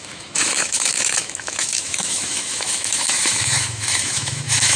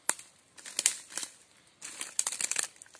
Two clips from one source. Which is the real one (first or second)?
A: second